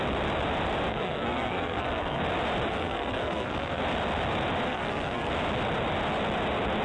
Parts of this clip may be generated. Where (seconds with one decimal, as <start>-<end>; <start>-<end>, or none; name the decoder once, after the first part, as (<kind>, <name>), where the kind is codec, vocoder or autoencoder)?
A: 0.9-2.2 (codec, SNAC); 2.7-3.8; 4.7-5.3